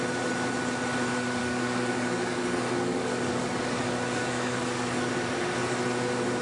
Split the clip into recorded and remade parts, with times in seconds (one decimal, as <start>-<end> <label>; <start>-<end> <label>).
0.0-1.4 recorded; 1.4-5.1 remade; 5.1-6.4 recorded